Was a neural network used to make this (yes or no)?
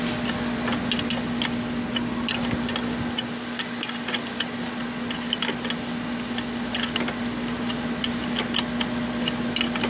no